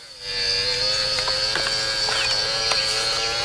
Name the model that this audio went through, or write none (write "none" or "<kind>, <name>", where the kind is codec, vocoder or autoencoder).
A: none